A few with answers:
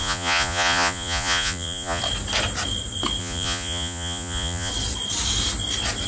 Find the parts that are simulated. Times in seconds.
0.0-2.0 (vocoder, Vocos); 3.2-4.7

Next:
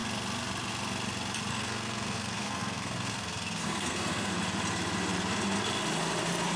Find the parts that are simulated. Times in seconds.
1.5-4.3 (codec, SNAC)

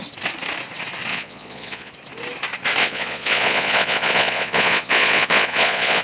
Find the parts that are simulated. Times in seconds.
1.1-1.9 (vocoder, Vocos); 2.8-6.0

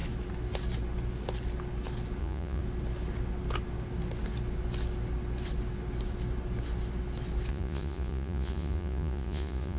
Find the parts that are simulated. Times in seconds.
2.2-2.6 (vocoder, Vocos); 7.5-9.8

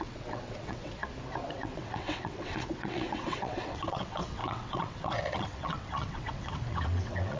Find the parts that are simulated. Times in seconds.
0.0-1.0 (vocoder, WaveNeXt); 1.5-7.4

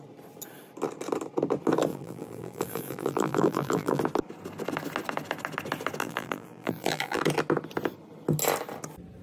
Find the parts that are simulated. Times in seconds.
1.9-4.0 (vocoder, BigVGAN v2); 6.0-7.2